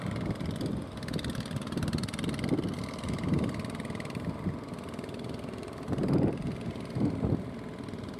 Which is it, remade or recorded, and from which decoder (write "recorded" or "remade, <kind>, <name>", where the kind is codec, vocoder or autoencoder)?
recorded